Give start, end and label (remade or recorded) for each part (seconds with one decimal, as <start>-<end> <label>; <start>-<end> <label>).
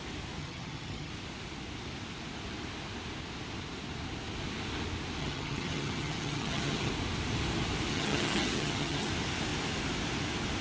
0.0-0.4 recorded; 0.4-1.1 remade; 1.1-5.2 recorded; 5.2-6.9 remade; 6.9-7.9 recorded; 7.9-9.1 remade; 9.1-10.6 recorded